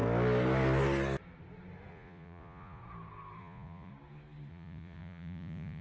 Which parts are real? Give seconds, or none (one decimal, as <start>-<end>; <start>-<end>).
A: 0.0-1.9; 2.8-3.4; 3.9-4.5